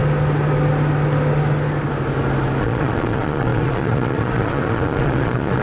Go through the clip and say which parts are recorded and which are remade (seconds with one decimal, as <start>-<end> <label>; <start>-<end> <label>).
0.0-2.6 recorded; 2.6-5.6 remade

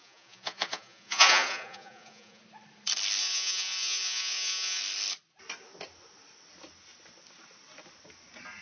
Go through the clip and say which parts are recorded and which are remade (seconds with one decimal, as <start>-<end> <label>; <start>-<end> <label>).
0.0-2.4 remade; 2.4-3.2 recorded; 3.2-4.8 remade; 4.8-8.6 recorded

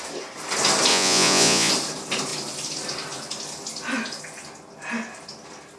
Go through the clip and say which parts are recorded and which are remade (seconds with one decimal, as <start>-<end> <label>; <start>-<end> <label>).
0.0-0.9 recorded; 0.9-1.7 remade; 1.7-5.8 recorded

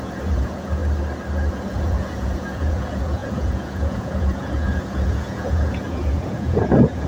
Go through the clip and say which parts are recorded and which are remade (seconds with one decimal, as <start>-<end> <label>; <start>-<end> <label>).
0.0-0.8 remade; 0.8-1.5 recorded; 1.5-7.1 remade

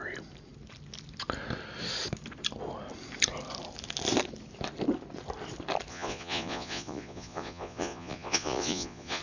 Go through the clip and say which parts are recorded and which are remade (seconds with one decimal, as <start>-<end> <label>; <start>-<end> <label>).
0.0-5.9 recorded; 5.9-9.2 remade

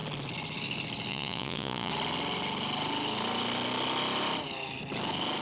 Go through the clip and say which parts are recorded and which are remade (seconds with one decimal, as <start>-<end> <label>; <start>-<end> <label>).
0.0-1.1 recorded; 1.1-1.9 remade; 1.9-5.4 recorded

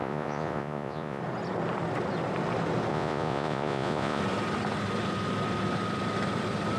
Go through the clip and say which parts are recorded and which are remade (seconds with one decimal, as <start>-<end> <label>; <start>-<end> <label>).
0.0-1.2 remade; 1.2-2.9 recorded; 2.9-4.2 remade; 4.2-6.8 recorded

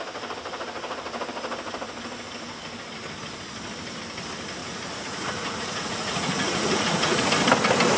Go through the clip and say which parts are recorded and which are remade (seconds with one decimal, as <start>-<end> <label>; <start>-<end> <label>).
0.0-4.6 recorded; 4.6-7.3 remade; 7.3-8.0 recorded